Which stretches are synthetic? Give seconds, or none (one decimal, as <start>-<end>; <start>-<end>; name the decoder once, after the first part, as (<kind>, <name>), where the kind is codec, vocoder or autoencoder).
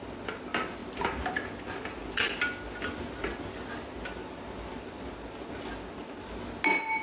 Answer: none